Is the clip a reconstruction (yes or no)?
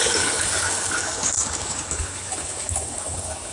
yes